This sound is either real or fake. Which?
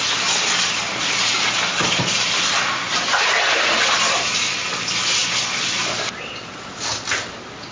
real